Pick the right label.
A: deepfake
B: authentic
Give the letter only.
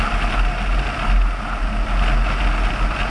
B